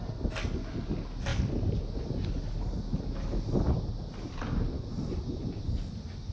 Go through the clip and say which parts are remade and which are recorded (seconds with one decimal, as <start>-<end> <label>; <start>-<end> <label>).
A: 0.0-6.3 recorded